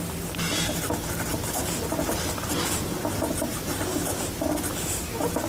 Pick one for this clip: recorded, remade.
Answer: recorded